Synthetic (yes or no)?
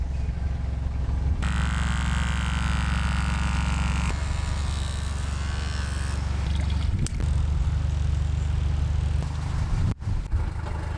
no